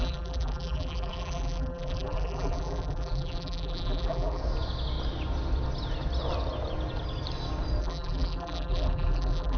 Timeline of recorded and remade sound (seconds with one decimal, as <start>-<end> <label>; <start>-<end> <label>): 0.0-4.4 remade; 4.4-7.8 recorded; 7.8-9.6 remade